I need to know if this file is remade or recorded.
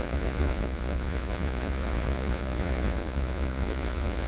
remade